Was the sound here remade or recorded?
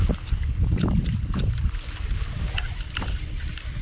recorded